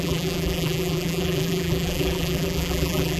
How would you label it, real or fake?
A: fake